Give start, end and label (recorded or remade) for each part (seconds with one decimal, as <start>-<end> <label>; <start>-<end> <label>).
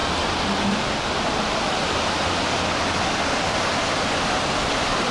0.0-5.1 recorded